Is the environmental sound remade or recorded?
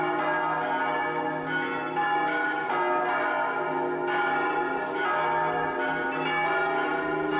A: recorded